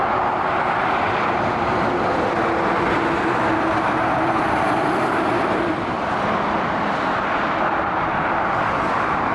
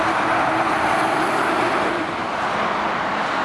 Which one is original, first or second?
second